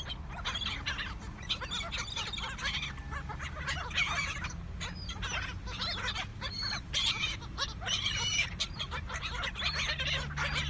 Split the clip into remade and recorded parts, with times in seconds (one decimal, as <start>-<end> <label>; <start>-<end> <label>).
0.0-6.3 recorded; 6.3-9.4 remade; 9.4-10.7 recorded